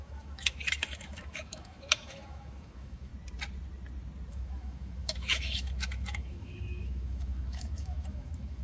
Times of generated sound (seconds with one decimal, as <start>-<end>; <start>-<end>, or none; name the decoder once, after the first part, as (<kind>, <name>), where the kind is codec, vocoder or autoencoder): 0.0-3.1 (autoencoder, DAC-VAE); 4.3-8.6

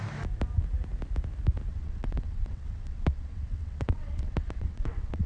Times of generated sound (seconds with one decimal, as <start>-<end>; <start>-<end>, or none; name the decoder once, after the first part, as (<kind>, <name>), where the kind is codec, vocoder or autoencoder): 1.7-5.3 (vocoder, WaveNeXt)

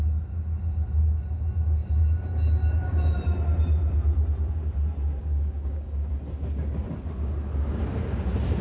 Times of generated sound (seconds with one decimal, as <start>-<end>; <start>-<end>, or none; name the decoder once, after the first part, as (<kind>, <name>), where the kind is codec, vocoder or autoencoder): 5.2-6.1 (codec, DAC)